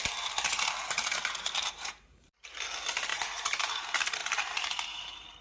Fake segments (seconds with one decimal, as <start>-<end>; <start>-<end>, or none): 1.1-2.5; 3.1-3.7; 4.2-5.4